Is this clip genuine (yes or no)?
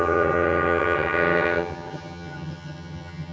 no